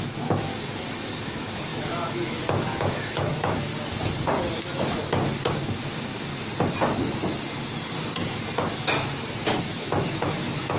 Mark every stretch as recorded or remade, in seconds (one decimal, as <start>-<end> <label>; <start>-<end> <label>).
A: 0.0-0.5 remade; 0.5-1.2 recorded; 1.2-3.7 remade; 3.7-5.5 recorded; 5.5-6.3 remade; 6.3-9.6 recorded; 9.6-10.8 remade